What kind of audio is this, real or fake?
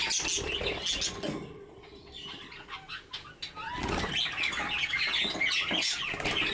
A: real